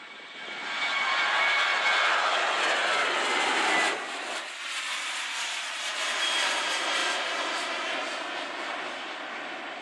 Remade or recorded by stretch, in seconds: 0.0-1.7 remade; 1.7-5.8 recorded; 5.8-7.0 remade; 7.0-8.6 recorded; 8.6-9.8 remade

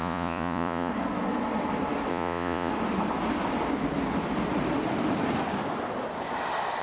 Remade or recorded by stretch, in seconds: 0.0-0.9 remade; 0.9-2.1 recorded; 2.1-2.7 remade; 2.7-6.8 recorded